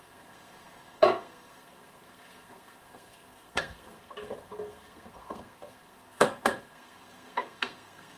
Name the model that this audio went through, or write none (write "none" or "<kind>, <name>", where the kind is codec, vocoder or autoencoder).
codec, SNAC